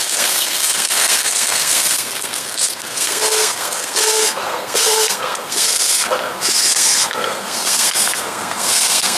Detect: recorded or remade remade